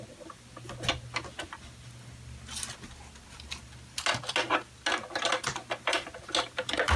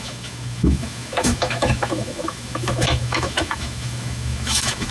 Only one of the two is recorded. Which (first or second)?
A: first